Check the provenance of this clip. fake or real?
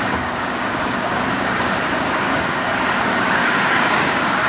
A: fake